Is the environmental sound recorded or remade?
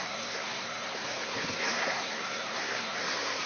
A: remade